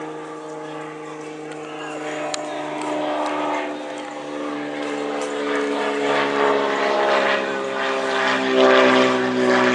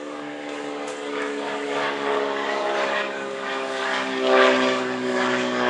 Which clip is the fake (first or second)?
second